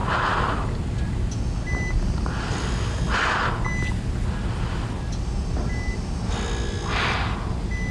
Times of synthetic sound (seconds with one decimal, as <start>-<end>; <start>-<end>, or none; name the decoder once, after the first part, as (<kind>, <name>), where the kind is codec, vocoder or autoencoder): none